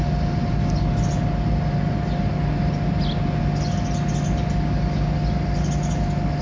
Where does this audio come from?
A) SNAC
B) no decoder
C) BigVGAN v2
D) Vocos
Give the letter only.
B